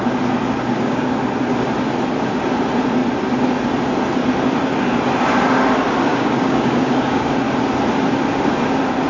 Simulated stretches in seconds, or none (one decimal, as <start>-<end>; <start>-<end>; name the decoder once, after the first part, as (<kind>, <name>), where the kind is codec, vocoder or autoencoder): 0.7-1.2 (codec, DAC); 6.1-7.3